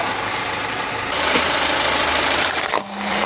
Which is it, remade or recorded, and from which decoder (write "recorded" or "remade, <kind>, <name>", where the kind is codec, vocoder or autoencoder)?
remade, vocoder, BigVGAN v2